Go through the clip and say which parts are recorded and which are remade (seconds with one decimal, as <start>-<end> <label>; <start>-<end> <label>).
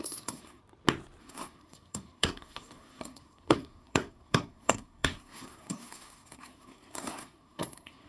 0.0-0.6 remade; 0.6-1.2 recorded; 1.2-8.1 remade